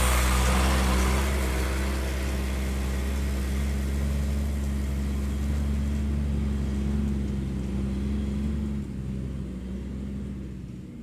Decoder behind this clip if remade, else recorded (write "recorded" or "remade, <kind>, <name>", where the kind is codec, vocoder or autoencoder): recorded